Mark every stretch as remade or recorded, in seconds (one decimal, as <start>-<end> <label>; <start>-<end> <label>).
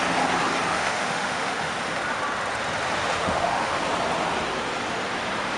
0.0-0.7 recorded; 0.7-1.7 remade; 1.7-3.0 recorded; 3.0-3.8 remade; 3.8-5.6 recorded